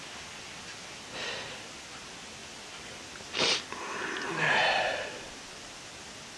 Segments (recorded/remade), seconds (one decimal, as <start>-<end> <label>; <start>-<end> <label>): 0.0-6.4 recorded